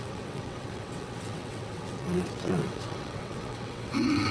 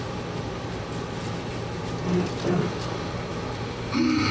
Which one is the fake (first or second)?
first